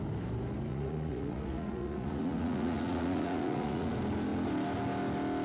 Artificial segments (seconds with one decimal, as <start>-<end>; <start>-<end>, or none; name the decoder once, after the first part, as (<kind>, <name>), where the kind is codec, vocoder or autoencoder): 0.7-3.9 (vocoder, Vocos)